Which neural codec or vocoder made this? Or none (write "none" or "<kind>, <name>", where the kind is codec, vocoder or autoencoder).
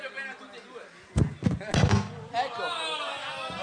none